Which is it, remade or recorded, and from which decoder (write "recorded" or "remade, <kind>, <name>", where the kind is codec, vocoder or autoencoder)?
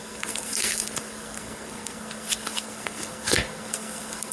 remade, codec, SNAC